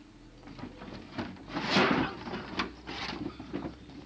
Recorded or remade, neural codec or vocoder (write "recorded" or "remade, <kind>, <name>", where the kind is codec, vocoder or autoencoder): recorded